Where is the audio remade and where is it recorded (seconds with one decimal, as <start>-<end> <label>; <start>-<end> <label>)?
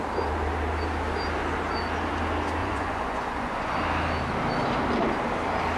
0.0-2.6 recorded; 2.6-3.8 remade; 3.8-5.8 recorded